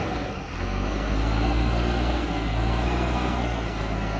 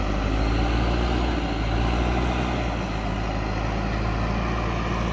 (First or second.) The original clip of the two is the second